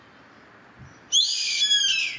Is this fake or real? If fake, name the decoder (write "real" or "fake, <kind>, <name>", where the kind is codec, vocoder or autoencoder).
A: real